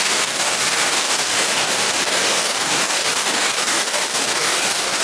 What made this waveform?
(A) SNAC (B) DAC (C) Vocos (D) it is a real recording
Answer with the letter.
B